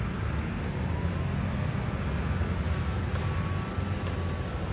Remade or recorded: recorded